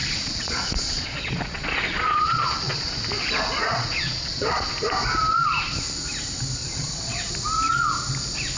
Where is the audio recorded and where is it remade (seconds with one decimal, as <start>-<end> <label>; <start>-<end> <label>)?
0.0-2.9 remade; 2.9-3.7 recorded; 3.7-4.7 remade; 4.7-6.6 recorded; 6.6-7.3 remade; 7.3-8.6 recorded